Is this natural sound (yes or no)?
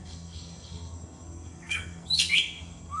no